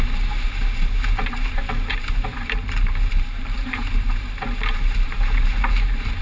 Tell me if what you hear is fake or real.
fake